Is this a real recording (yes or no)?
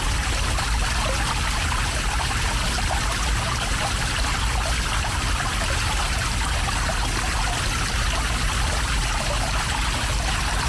yes